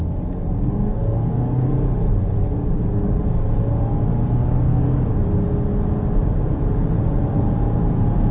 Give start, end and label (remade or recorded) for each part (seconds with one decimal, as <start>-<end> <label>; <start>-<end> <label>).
0.0-1.7 remade; 1.7-4.1 recorded; 4.1-5.1 remade; 5.1-8.3 recorded